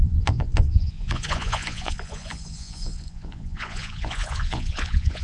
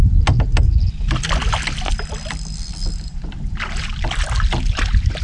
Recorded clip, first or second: second